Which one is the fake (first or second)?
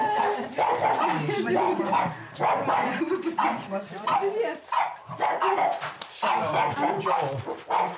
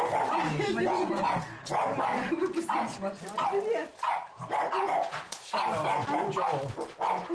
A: first